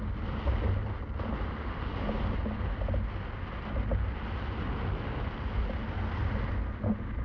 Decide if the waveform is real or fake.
real